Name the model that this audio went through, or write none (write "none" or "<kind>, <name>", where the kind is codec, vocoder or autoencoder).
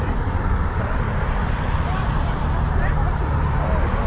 none